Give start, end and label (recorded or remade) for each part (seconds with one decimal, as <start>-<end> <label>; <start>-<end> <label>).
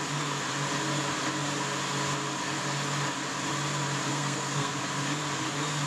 0.0-4.1 recorded; 4.1-4.7 remade; 4.7-5.9 recorded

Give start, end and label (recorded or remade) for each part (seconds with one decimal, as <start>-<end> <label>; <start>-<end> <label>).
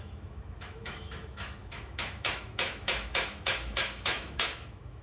0.0-5.0 remade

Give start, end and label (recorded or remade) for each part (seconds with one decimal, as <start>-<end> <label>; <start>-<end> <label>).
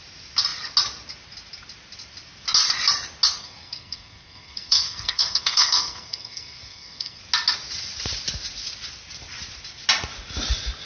0.0-3.4 recorded; 3.4-7.2 remade; 7.2-10.9 recorded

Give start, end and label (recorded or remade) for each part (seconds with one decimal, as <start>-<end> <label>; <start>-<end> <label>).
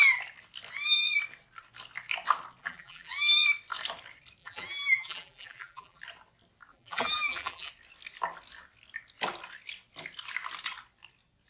0.0-2.6 recorded; 2.6-3.3 remade; 3.3-4.4 recorded; 4.4-6.0 remade; 6.0-6.7 recorded; 6.7-7.7 remade; 7.7-11.5 recorded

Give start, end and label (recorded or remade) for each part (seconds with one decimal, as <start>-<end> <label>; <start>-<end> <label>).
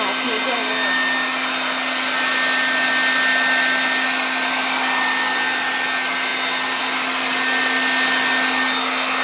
0.0-9.2 recorded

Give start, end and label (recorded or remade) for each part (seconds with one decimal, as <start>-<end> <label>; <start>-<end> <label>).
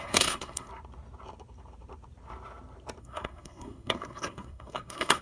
0.0-0.7 remade; 0.7-3.0 recorded; 3.0-5.2 remade